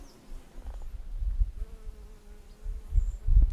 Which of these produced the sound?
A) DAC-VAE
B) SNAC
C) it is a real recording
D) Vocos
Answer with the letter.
C